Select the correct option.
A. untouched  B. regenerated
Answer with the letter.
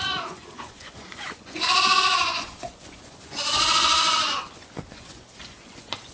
B